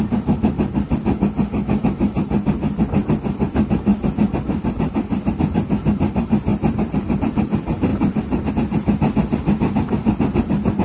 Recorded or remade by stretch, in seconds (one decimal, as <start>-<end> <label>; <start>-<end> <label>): 0.0-3.9 recorded; 3.9-5.3 remade; 5.3-7.9 recorded; 7.9-8.5 remade; 8.5-10.8 recorded